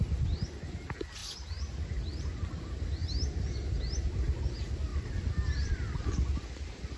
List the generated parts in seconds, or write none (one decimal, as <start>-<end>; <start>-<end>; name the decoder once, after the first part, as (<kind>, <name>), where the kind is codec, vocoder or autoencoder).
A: 4.9-6.0 (vocoder, BigVGAN v2)